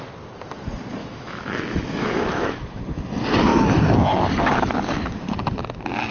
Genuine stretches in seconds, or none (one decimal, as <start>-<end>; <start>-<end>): 0.0-1.0; 2.8-6.1